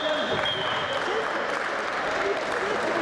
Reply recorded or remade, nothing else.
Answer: recorded